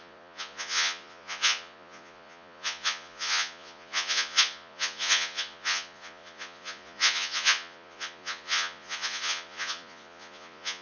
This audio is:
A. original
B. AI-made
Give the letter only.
B